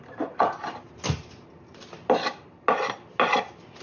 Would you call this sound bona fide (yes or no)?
yes